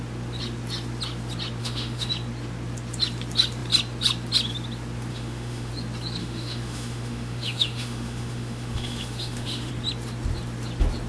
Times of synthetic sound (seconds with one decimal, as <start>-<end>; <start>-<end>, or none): 1.6-2.1; 5.1-5.7; 6.2-9.7